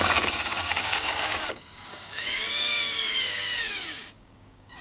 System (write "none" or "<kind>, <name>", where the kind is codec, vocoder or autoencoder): codec, DAC